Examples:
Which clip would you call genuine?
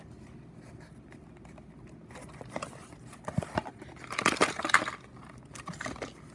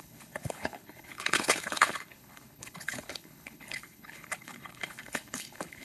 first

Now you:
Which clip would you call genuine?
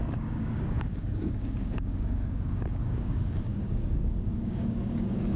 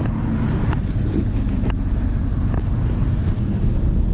second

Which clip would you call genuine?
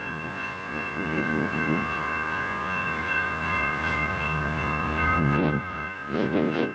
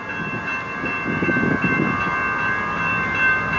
second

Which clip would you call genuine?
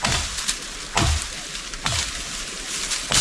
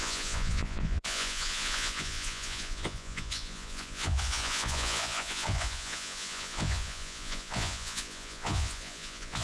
first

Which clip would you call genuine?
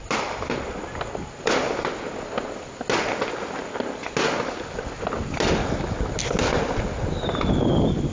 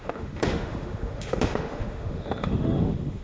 first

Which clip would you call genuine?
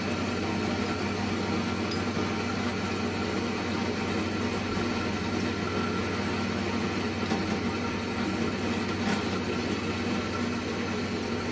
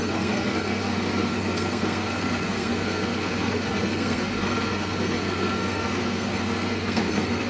first